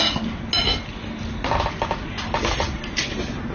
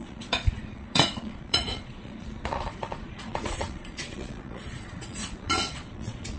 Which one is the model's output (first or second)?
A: second